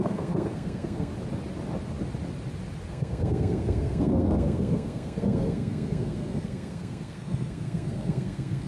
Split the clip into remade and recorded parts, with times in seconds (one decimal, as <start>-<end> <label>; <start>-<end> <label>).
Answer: 0.0-1.1 remade; 1.1-2.9 recorded; 2.9-8.7 remade